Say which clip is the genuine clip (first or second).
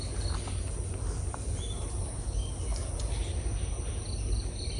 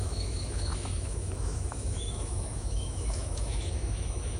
first